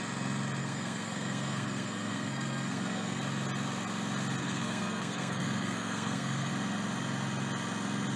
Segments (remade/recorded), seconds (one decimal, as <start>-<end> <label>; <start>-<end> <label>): 0.0-0.6 recorded; 0.6-3.2 remade; 3.2-4.4 recorded; 4.4-6.5 remade; 6.5-8.2 recorded